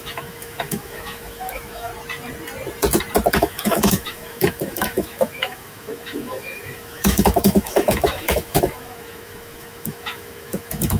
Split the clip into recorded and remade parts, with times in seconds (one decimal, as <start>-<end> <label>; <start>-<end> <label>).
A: 0.0-1.9 remade; 1.9-3.3 recorded; 3.3-11.0 remade